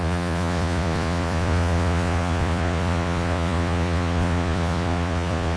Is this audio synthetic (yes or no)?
yes